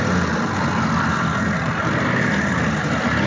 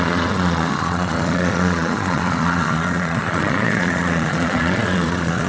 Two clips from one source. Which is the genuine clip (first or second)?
first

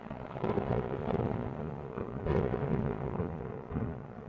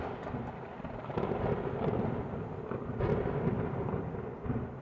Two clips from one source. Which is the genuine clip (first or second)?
second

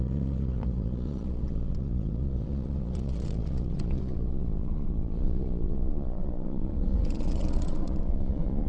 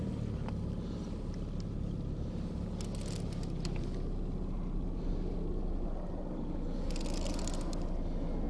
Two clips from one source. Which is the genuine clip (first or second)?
second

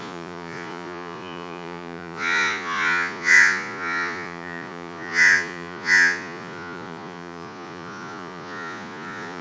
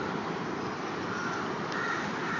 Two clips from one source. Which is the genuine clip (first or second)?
second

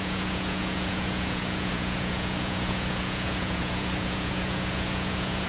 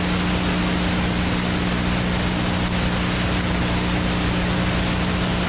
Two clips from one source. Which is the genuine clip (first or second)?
second